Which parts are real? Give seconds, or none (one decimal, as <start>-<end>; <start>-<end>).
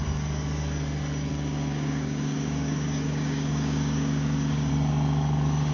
0.0-1.3; 4.7-5.7